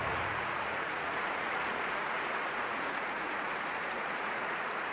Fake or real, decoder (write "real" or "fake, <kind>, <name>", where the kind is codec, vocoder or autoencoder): fake, vocoder, Vocos